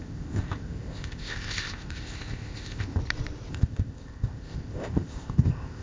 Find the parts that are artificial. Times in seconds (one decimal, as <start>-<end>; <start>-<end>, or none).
0.0-3.0; 3.5-5.8